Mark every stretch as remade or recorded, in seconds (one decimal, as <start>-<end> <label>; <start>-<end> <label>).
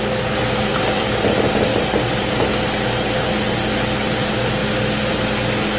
0.0-0.7 recorded; 0.7-1.2 remade; 1.2-1.7 recorded; 1.7-2.3 remade; 2.3-5.8 recorded